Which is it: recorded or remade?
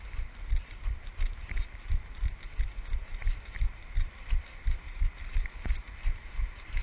recorded